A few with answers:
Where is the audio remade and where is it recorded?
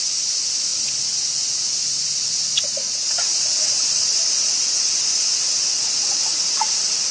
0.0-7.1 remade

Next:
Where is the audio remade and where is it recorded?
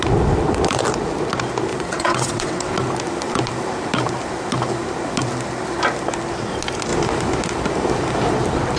0.0-1.7 recorded; 1.7-2.7 remade; 2.7-8.8 recorded